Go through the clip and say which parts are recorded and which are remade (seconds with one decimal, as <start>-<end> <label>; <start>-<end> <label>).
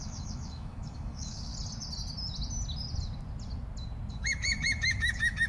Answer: 0.0-1.5 remade; 1.5-4.1 recorded; 4.1-5.5 remade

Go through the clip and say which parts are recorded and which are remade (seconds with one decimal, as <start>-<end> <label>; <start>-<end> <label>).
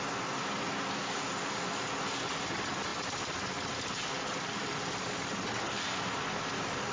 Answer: 0.0-6.9 recorded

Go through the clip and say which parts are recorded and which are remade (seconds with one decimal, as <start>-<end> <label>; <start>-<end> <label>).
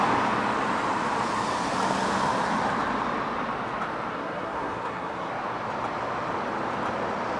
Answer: 0.0-4.1 recorded; 4.1-5.3 remade; 5.3-7.4 recorded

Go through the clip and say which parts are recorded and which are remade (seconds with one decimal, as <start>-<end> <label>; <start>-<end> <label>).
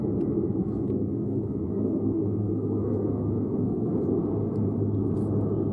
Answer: 0.0-0.6 recorded; 0.6-4.0 remade; 4.0-5.7 recorded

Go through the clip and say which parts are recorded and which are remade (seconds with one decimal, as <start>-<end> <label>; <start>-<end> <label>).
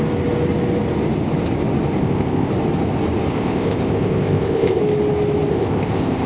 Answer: 0.0-2.0 recorded; 2.0-2.5 remade; 2.5-3.3 recorded; 3.3-4.8 remade; 4.8-5.5 recorded; 5.5-6.3 remade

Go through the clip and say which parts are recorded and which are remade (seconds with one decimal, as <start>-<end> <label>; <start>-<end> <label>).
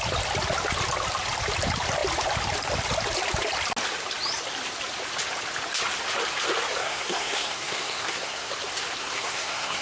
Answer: 0.0-6.8 recorded; 6.8-8.5 remade; 8.5-9.0 recorded; 9.0-9.8 remade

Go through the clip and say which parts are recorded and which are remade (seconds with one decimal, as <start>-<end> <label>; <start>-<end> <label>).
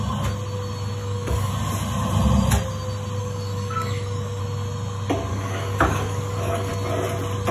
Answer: 0.0-1.0 recorded; 1.0-1.5 remade; 1.5-3.2 recorded; 3.2-4.4 remade; 4.4-5.3 recorded; 5.3-6.7 remade; 6.7-7.5 recorded